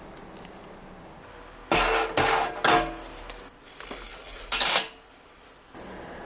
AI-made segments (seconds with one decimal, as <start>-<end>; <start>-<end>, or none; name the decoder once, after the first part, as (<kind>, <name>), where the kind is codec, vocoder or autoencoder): none

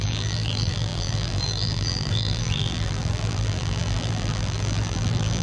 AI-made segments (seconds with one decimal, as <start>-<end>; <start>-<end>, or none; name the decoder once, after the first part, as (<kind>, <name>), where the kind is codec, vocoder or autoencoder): 0.0-5.4 (vocoder, BigVGAN v2)

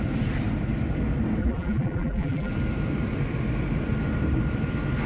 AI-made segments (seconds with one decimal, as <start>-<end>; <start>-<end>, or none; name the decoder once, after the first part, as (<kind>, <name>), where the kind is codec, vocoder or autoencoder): 1.4-2.5 (vocoder, BigVGAN v2)

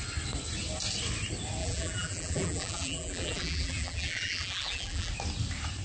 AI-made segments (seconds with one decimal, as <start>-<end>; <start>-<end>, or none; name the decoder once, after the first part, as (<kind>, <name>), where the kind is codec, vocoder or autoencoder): 1.6-5.1 (vocoder, BigVGAN v2)

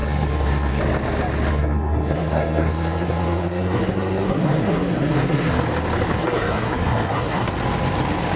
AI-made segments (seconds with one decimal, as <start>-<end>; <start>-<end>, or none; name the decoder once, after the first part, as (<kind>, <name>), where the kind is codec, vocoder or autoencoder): 0.0-0.8 (codec, SNAC); 1.5-5.6; 6.1-7.5

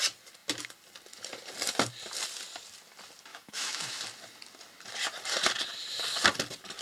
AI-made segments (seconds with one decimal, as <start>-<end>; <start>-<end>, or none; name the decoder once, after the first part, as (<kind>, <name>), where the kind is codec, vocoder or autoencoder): 3.3-4.0 (autoencoder, DAC-VAE)